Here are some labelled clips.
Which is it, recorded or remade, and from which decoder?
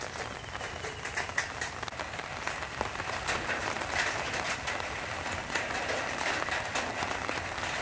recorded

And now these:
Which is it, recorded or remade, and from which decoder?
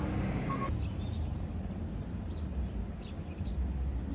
recorded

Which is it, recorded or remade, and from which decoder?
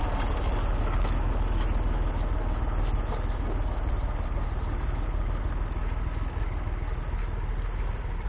recorded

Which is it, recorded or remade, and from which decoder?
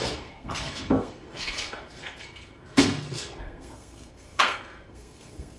remade, codec, SNAC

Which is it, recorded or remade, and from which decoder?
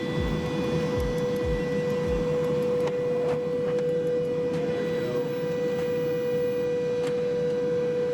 recorded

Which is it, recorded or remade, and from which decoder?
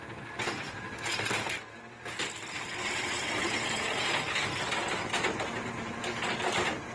recorded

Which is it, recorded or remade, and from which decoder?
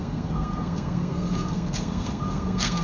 remade, codec, SNAC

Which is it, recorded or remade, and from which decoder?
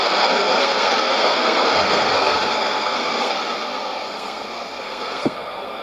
remade, codec, SNAC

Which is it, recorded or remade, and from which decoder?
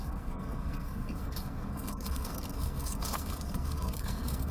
remade, codec, SNAC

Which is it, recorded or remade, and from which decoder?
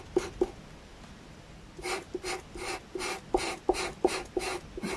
recorded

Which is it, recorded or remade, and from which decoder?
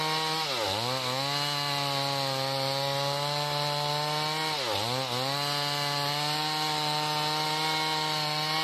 recorded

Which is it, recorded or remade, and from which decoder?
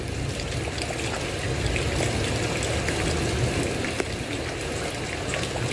recorded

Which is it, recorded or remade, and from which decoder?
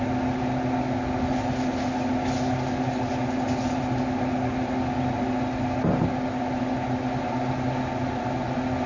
recorded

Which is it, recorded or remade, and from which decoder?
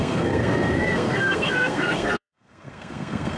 remade, codec, SNAC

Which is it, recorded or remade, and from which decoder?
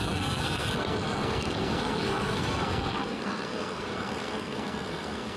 remade, codec, SNAC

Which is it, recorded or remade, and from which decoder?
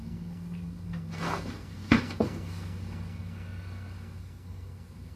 remade, codec, SNAC